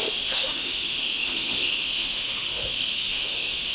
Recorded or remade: remade